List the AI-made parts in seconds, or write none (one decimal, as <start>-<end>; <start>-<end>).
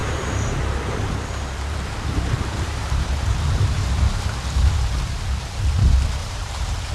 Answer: 0.0-3.6; 6.2-6.9